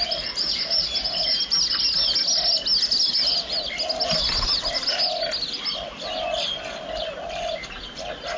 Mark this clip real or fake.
real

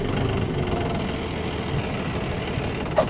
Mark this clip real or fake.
real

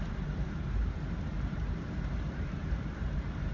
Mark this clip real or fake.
fake